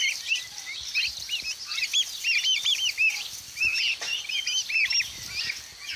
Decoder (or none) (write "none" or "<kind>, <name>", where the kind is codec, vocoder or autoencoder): none